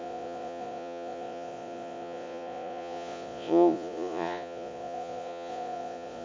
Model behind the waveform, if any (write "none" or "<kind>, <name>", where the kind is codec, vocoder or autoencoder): vocoder, Vocos